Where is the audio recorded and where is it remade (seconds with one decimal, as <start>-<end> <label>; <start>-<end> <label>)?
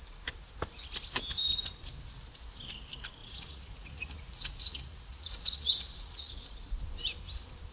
0.0-3.2 recorded; 3.2-6.3 remade; 6.3-7.7 recorded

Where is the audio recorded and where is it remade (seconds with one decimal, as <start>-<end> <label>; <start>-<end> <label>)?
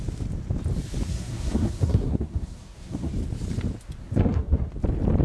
0.0-1.1 recorded; 1.1-3.1 remade; 3.1-4.0 recorded; 4.0-4.7 remade; 4.7-5.2 recorded